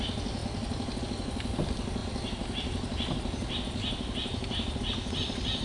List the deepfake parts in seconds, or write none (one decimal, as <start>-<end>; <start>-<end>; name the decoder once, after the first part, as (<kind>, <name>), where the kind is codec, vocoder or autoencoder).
none